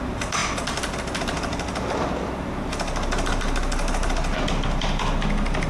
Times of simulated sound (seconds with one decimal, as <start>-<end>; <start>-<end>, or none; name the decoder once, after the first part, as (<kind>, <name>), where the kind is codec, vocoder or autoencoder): none